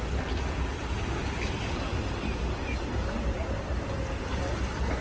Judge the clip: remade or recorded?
recorded